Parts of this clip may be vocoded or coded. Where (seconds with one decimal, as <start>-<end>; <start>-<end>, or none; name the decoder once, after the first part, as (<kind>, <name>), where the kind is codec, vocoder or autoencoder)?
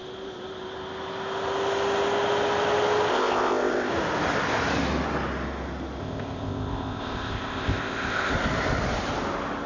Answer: 3.1-3.9 (codec, ZipCodec); 6.0-8.3